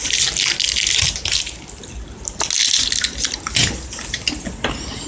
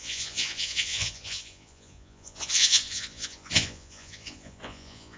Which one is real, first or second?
first